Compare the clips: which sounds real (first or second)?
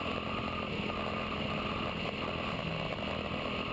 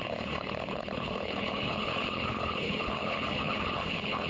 first